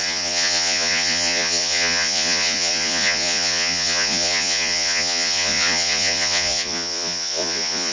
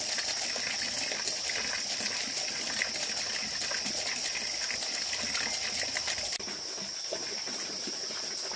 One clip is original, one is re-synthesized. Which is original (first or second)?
second